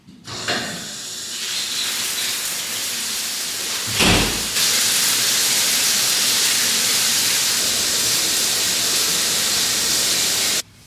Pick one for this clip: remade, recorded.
remade